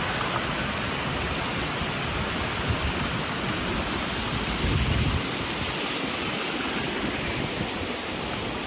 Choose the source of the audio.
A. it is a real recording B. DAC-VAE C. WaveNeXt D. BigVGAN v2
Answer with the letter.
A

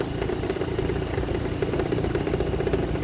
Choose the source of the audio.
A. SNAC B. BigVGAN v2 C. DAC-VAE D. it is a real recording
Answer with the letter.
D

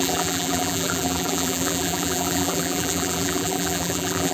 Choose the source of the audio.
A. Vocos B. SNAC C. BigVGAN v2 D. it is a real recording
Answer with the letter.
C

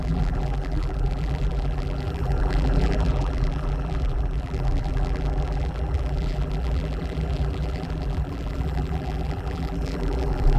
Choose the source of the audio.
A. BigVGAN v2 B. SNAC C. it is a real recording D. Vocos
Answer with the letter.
A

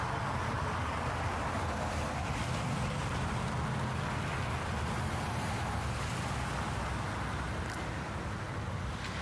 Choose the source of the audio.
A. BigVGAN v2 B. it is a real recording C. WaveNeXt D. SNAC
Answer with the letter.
B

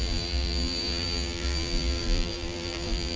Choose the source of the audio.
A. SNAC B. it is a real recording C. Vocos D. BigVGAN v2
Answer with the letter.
D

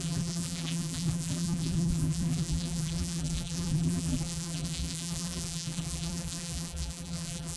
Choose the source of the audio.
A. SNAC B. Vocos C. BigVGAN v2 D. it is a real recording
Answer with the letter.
C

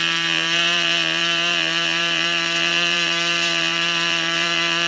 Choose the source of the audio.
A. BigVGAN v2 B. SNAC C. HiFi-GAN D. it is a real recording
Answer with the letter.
A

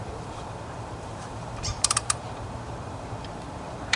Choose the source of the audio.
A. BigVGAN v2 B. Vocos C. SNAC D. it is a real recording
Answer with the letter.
A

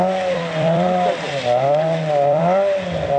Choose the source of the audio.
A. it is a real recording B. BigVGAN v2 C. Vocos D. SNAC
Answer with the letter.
B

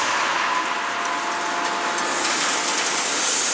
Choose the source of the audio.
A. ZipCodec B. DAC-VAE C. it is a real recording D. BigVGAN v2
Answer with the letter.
C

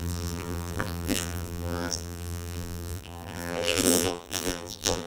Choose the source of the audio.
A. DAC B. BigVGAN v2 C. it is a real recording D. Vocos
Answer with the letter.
B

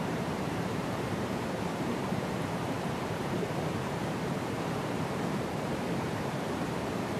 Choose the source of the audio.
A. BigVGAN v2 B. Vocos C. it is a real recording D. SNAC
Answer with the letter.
A